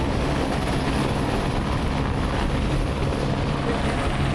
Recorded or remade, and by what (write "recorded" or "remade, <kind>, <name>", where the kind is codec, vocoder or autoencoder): recorded